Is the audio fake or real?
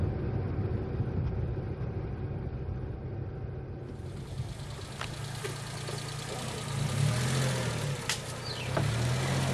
real